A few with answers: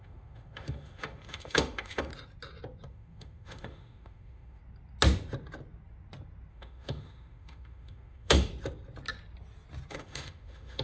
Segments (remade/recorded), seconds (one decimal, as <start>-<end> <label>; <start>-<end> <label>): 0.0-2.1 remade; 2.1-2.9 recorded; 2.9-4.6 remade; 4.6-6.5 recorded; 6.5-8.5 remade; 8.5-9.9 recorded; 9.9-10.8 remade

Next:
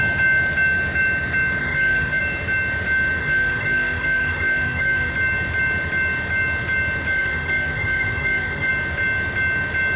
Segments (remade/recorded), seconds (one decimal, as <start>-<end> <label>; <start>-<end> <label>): 0.0-1.6 recorded; 1.6-2.2 remade; 2.2-3.2 recorded; 3.2-5.1 remade; 5.1-7.1 recorded; 7.1-8.7 remade; 8.7-10.0 recorded

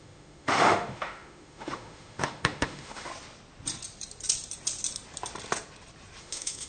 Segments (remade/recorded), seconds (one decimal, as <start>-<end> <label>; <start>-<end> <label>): 0.0-3.1 remade; 3.1-6.2 recorded; 6.2-6.7 remade